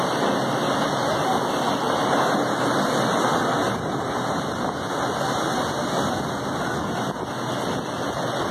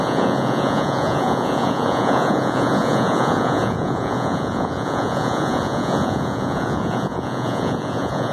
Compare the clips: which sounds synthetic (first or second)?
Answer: second